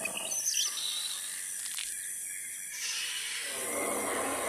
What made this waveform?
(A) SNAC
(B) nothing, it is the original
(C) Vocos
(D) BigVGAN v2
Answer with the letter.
B